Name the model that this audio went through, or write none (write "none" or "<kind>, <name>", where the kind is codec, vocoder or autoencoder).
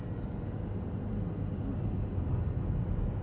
none